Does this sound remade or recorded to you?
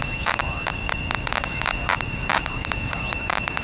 remade